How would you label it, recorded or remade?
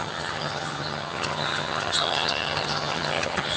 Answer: remade